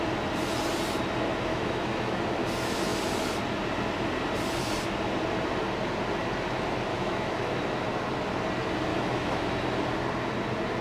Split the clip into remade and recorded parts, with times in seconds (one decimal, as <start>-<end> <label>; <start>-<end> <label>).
0.0-1.5 recorded; 1.5-2.2 remade; 2.2-6.9 recorded; 6.9-7.5 remade; 7.5-8.9 recorded; 8.9-9.5 remade; 9.5-10.8 recorded